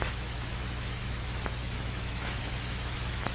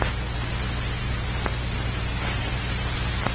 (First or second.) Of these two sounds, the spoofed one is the first